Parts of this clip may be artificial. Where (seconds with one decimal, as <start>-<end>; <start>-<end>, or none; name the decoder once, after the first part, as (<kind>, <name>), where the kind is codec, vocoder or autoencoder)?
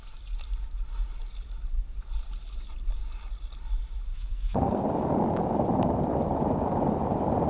4.1-4.8 (codec, SNAC)